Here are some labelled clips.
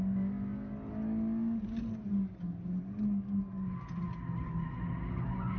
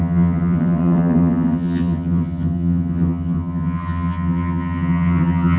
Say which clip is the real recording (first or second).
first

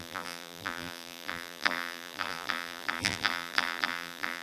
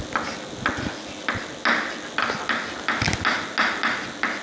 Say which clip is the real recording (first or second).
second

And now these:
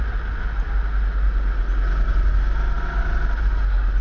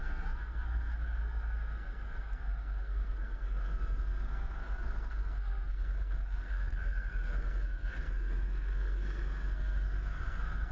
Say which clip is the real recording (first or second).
first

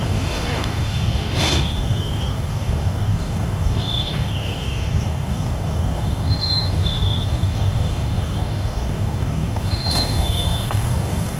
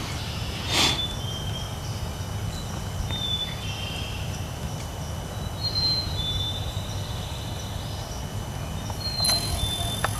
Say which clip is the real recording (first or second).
second